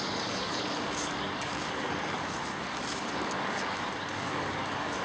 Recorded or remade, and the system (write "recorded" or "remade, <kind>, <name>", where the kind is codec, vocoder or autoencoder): remade, codec, DAC